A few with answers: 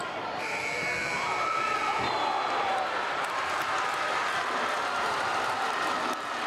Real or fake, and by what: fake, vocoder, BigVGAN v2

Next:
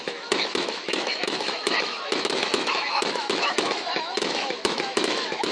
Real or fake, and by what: fake, autoencoder, DAC-VAE